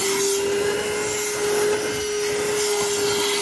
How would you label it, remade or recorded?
recorded